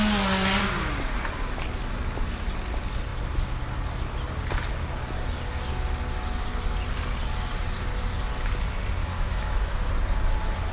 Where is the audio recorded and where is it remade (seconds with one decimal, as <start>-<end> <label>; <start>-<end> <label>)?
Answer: 0.0-9.0 recorded; 9.0-9.9 remade; 9.9-10.7 recorded